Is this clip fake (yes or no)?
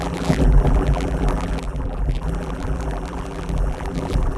yes